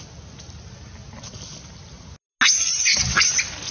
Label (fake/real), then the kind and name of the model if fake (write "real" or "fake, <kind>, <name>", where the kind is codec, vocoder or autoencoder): real